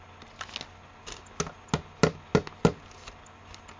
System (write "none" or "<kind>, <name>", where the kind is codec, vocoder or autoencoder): none